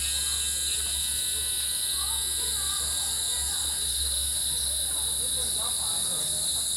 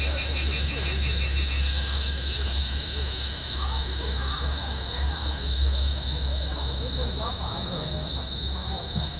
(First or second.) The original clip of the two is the first